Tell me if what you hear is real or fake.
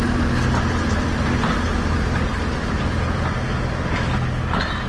real